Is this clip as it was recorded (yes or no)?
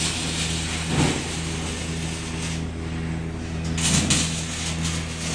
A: yes